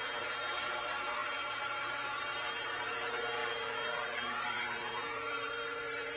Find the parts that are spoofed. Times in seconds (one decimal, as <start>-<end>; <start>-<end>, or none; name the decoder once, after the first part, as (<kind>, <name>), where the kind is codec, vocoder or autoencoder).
0.0-3.4 (vocoder, BigVGAN v2); 4.2-6.2